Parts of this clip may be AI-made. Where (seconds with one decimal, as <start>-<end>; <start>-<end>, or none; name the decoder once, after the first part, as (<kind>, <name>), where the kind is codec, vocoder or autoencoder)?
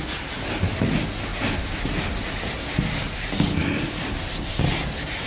1.3-4.5 (vocoder, BigVGAN v2)